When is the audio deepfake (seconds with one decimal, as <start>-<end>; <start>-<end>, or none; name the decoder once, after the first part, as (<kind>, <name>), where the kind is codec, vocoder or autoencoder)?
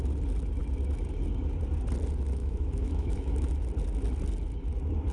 2.4-3.5 (autoencoder, DAC-VAE)